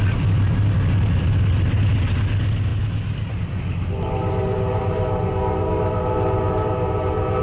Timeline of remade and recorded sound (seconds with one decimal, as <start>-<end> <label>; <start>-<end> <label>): 0.0-7.4 recorded